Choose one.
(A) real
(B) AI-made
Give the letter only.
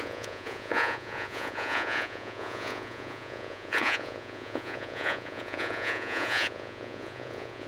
B